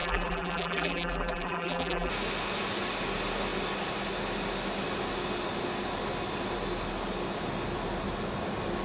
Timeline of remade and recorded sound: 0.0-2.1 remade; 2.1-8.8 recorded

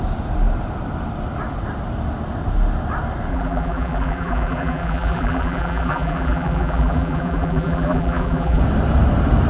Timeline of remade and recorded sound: 0.0-3.3 recorded; 3.3-8.6 remade; 8.6-9.5 recorded

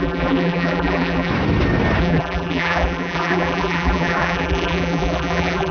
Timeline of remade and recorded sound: 0.0-1.3 remade; 1.3-2.0 recorded; 2.0-5.7 remade

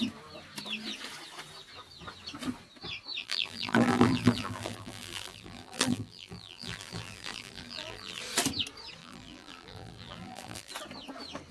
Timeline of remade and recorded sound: 0.0-3.2 recorded; 3.2-8.2 remade; 8.2-9.0 recorded; 9.0-10.7 remade; 10.7-11.5 recorded

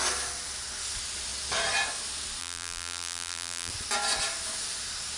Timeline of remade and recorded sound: 0.0-2.4 recorded; 2.4-3.7 remade; 3.7-5.2 recorded

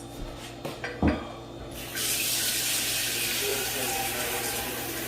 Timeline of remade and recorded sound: 0.0-3.5 recorded; 3.5-4.6 remade; 4.6-5.1 recorded